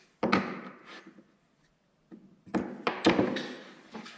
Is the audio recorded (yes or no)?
yes